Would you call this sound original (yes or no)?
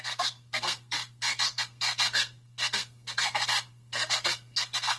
no